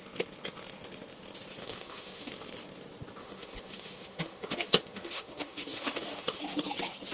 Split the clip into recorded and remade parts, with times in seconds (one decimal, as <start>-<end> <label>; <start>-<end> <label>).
0.0-1.6 recorded; 1.6-2.3 remade; 2.3-3.2 recorded; 3.2-6.4 remade; 6.4-7.1 recorded

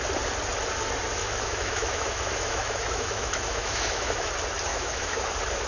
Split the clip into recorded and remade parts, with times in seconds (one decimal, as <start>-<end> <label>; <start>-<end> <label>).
0.0-1.2 recorded; 1.2-4.3 remade; 4.3-4.7 recorded; 4.7-5.2 remade; 5.2-5.7 recorded